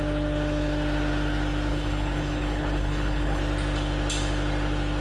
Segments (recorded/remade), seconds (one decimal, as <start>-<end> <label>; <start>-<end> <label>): 0.0-1.7 recorded; 1.7-3.4 remade; 3.4-5.0 recorded